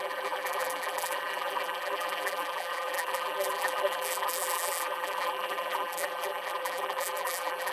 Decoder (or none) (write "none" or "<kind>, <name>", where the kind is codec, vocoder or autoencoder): vocoder, BigVGAN v2